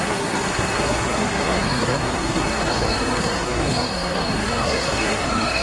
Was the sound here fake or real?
fake